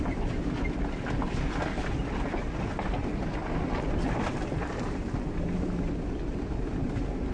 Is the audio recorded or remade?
recorded